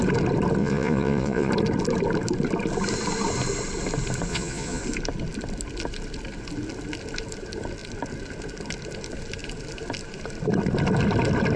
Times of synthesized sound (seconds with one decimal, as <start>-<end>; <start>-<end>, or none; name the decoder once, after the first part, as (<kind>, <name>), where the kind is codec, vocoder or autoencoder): 0.6-1.5 (vocoder, Vocos); 4.3-4.8